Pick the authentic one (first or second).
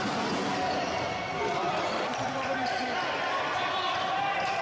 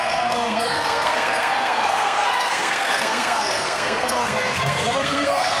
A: first